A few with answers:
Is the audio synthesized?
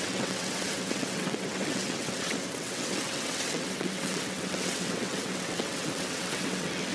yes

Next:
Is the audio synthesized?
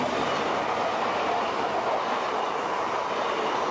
no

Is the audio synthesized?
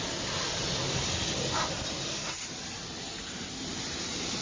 no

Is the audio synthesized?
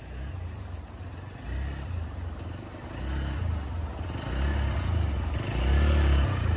no